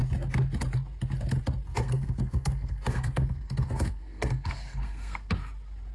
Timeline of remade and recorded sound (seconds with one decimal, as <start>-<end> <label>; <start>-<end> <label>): 0.0-1.8 recorded; 1.8-5.3 remade; 5.3-5.9 recorded